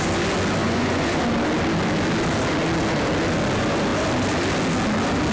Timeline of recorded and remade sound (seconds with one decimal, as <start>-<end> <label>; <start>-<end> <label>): 0.0-0.6 recorded; 0.6-1.2 remade; 1.2-5.3 recorded